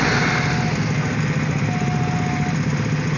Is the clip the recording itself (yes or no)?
yes